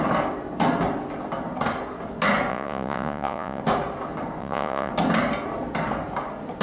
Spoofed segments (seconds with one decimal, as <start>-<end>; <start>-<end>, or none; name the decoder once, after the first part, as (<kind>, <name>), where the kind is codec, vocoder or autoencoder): 2.5-3.6 (vocoder, Vocos); 4.4-4.9